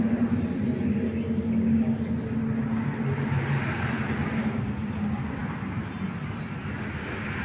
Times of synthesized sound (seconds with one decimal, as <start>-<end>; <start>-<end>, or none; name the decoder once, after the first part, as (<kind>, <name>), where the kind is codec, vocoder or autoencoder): none